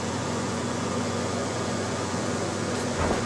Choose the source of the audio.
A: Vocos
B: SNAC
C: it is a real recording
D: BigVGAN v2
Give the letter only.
A